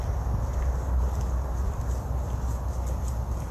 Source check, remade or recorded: recorded